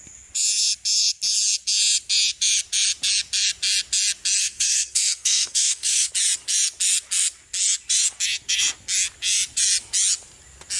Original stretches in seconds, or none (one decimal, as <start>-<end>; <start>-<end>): 0.0-4.4; 6.1-10.8

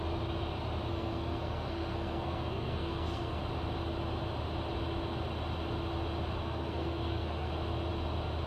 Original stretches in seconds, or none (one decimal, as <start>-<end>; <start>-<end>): 0.0-0.9; 3.4-6.4; 7.5-8.5

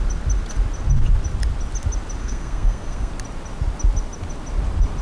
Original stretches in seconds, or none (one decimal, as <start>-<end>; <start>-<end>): 0.0-2.2; 3.1-5.0

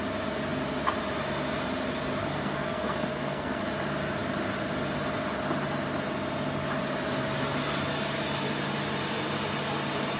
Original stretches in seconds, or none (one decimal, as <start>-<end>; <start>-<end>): 0.0-2.2; 3.6-10.2

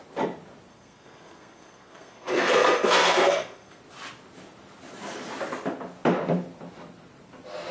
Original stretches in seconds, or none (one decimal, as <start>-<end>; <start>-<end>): 0.0-0.7; 3.8-7.7